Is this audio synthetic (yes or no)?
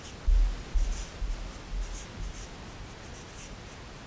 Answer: no